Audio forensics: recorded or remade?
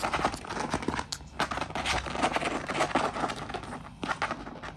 recorded